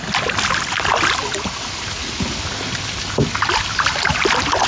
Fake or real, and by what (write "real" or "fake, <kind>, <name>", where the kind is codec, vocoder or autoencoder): real